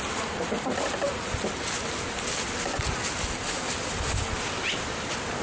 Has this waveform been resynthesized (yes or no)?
no